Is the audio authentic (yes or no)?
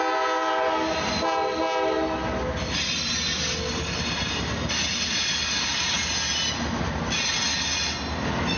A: yes